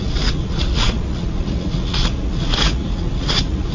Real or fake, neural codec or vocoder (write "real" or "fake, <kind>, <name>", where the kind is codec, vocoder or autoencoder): fake, vocoder, Vocos